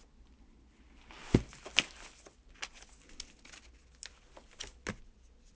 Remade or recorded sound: recorded